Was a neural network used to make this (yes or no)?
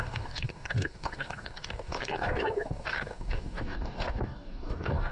yes